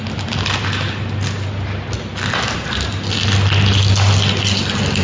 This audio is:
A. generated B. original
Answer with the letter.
B